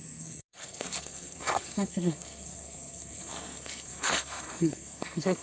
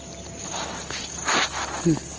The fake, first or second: first